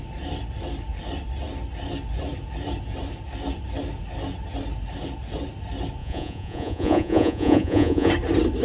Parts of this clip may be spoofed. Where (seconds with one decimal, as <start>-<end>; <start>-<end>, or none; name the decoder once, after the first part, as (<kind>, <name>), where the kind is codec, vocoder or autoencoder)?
6.0-8.1 (vocoder, Vocos)